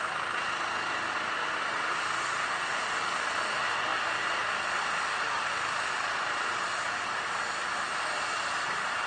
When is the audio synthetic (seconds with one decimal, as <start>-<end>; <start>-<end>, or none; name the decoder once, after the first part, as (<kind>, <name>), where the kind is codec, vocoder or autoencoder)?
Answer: none

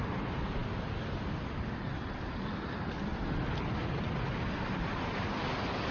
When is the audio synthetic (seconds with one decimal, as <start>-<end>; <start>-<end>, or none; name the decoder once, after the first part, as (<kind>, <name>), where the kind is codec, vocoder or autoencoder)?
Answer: none